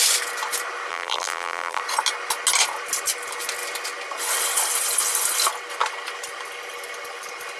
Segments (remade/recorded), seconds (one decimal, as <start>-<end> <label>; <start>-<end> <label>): 0.0-0.9 recorded; 0.9-1.8 remade; 1.8-7.6 recorded